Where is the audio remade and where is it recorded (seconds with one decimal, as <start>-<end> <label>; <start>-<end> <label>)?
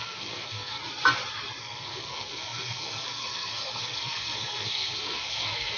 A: 0.0-0.8 remade; 0.8-1.6 recorded; 1.6-5.8 remade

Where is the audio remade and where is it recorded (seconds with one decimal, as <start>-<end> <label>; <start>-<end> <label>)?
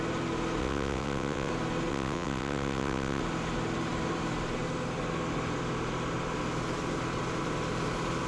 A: 0.0-0.6 recorded; 0.6-1.5 remade; 1.5-1.9 recorded; 1.9-3.2 remade; 3.2-8.3 recorded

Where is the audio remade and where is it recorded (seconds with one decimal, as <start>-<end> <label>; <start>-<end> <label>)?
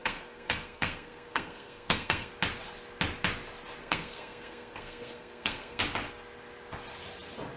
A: 0.0-2.3 remade; 2.3-3.8 recorded; 3.8-5.8 remade; 5.8-7.6 recorded